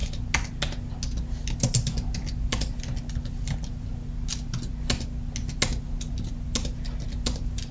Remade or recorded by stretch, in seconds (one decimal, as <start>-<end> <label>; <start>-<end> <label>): 0.0-7.7 recorded